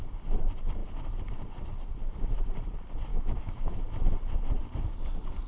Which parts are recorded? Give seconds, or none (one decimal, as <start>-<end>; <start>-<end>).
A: 0.0-3.1; 3.8-5.5